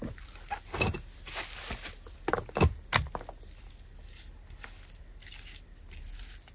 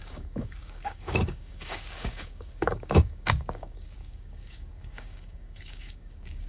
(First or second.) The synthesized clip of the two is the second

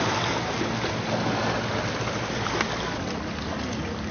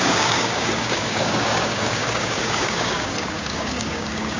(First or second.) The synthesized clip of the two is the second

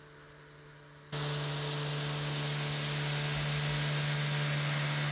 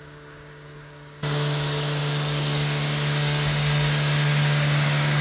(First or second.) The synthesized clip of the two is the second